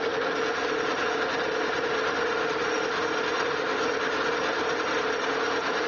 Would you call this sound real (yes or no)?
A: yes